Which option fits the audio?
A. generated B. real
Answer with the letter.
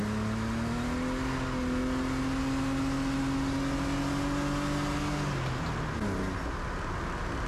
B